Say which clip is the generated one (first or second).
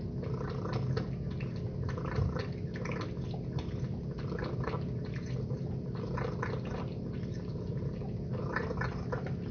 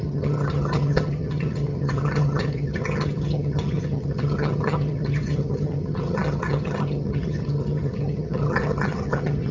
second